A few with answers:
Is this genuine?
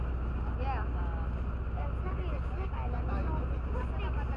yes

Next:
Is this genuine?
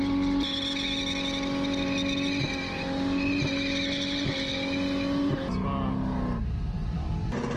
yes